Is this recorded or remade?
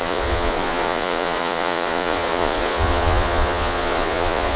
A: remade